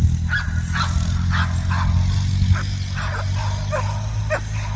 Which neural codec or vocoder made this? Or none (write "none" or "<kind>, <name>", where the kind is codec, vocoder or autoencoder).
none